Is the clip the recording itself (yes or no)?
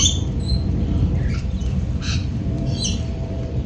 no